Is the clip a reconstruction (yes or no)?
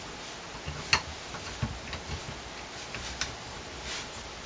no